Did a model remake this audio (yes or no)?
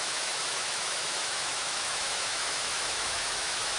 yes